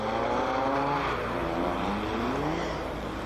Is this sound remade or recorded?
recorded